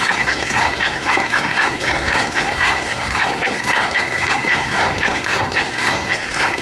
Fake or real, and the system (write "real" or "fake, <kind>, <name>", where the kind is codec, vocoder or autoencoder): fake, codec, SNAC